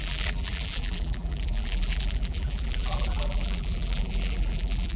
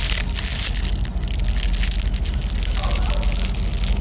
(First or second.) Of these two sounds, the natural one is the second